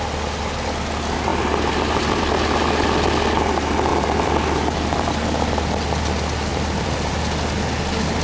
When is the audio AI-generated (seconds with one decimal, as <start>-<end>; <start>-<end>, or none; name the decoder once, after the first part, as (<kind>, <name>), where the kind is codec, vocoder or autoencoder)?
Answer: 1.3-2.4 (vocoder, BigVGAN v2); 3.9-5.1; 6.5-7.1